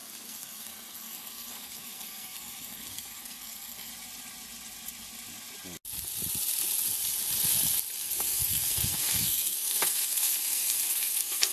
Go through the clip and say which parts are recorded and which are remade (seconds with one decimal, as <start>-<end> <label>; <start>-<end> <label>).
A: 0.0-3.9 remade; 3.9-8.0 recorded; 8.0-11.5 remade